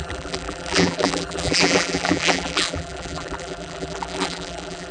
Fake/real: fake